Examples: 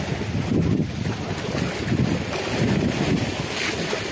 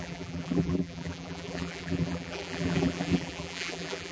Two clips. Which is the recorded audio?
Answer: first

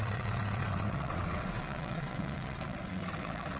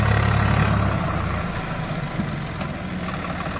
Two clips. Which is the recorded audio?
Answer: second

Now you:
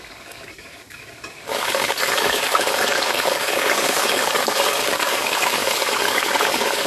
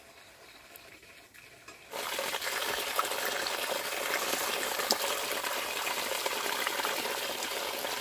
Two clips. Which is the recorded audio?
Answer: second